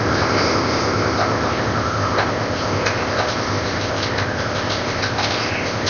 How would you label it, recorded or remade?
remade